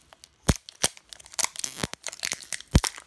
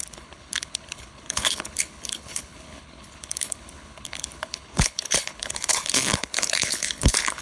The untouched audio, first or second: first